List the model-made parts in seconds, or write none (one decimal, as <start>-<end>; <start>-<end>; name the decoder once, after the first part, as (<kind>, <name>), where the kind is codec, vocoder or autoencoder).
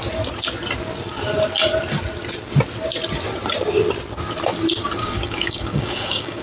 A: 5.0-6.4 (codec, DAC)